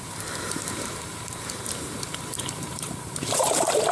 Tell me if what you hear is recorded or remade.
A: remade